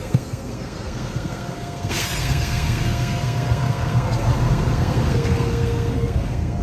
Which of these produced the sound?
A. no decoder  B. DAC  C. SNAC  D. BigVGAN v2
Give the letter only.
C